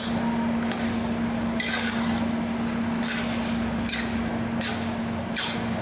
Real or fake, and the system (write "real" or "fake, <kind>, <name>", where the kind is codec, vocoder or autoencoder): real